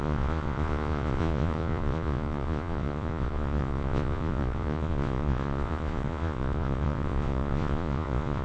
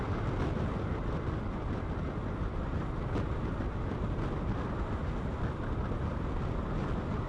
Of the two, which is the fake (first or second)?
first